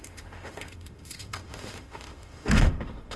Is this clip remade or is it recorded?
remade